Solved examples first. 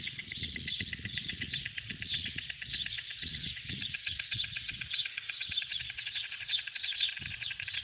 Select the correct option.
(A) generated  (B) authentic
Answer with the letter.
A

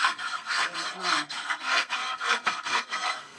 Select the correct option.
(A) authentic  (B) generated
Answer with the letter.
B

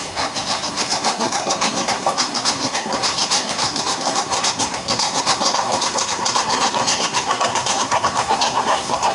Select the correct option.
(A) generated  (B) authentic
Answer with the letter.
A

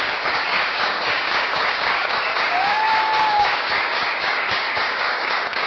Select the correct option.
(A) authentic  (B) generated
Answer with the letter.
B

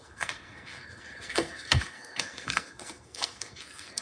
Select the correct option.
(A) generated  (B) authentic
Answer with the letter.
A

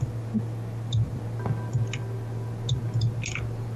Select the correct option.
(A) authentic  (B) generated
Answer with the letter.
A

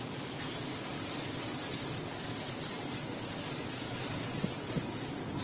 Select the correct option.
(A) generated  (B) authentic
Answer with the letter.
B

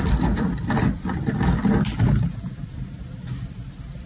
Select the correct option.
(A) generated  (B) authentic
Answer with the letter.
A